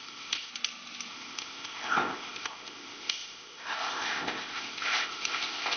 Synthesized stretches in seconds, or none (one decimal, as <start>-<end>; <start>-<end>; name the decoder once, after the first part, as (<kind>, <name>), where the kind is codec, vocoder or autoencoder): 0.0-0.5 (codec, ZipCodec); 1.1-5.8